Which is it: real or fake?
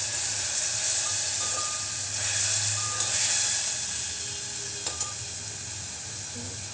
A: real